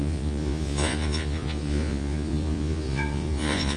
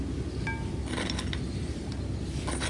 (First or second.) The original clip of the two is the second